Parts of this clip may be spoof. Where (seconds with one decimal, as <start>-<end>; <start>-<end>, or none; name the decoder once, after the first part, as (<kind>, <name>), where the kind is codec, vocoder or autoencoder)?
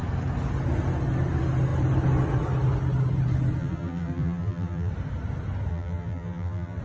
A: 3.6-4.9 (vocoder, BigVGAN v2); 5.7-6.8